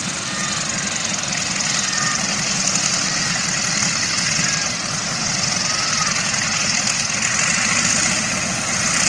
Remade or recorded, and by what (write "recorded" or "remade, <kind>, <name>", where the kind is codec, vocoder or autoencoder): recorded